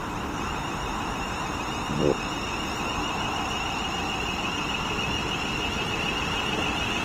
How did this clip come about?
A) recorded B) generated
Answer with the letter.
A